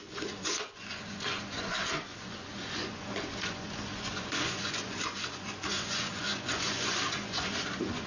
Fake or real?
fake